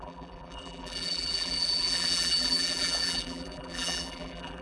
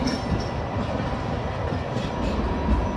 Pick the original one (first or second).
second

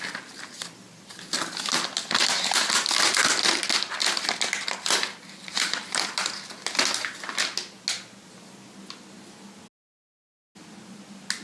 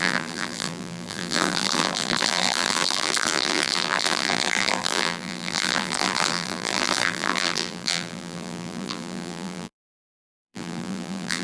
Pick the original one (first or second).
first